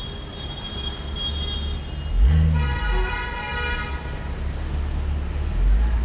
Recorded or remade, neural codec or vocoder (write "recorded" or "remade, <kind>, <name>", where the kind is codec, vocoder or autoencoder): recorded